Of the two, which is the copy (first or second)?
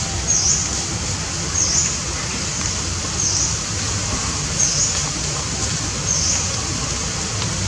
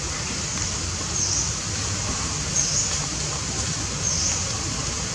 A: second